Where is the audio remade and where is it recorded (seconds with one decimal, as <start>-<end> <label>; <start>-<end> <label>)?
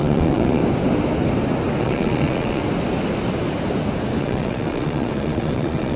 0.0-0.6 remade; 0.6-1.8 recorded; 1.8-2.6 remade; 2.6-4.2 recorded; 4.2-6.0 remade